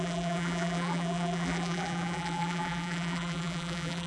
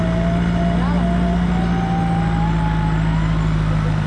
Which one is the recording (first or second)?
second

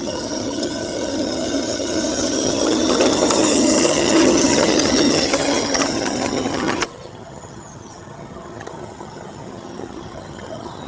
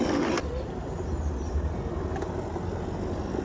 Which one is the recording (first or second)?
second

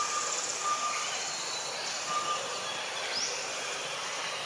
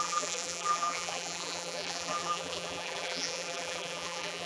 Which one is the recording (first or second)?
first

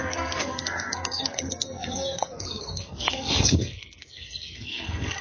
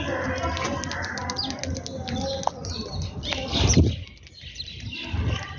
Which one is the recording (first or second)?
second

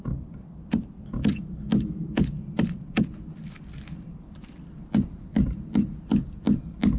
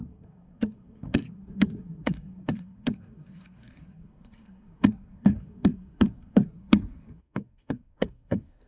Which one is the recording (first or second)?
first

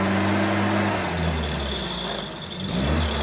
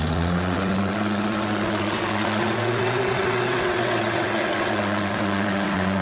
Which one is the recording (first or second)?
first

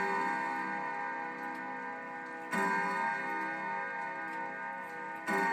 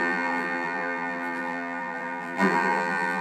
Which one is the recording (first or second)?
first